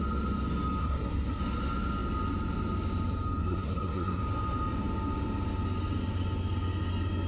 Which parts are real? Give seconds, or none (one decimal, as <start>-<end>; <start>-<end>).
0.0-0.8; 1.4-3.4; 4.2-7.3